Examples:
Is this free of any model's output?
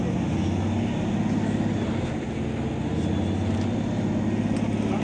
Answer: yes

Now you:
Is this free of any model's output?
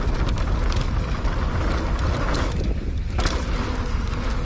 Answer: yes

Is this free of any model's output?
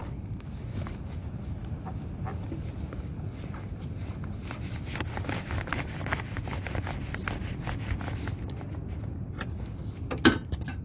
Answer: yes